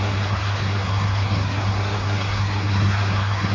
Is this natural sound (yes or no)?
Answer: no